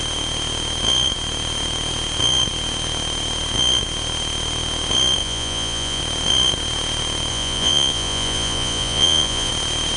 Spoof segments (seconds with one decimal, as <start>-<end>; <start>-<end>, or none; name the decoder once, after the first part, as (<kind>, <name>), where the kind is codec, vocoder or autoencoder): 5.2-6.0 (vocoder, Vocos); 7.3-9.5